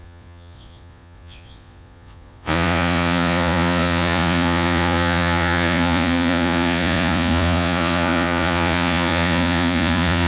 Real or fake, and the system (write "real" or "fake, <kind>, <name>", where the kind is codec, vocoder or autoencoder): fake, vocoder, Vocos